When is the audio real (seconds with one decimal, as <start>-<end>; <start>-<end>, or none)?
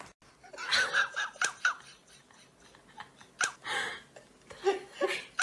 0.0-5.4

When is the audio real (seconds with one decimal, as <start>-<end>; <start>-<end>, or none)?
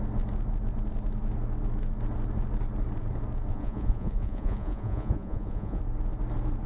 0.0-3.5; 5.8-6.7